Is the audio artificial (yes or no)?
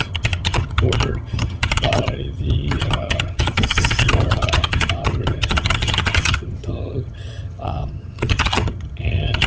yes